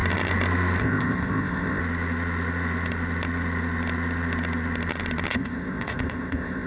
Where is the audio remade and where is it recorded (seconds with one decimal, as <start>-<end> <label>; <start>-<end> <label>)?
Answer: 0.0-0.8 recorded; 0.8-1.8 remade; 1.8-5.3 recorded; 5.3-6.7 remade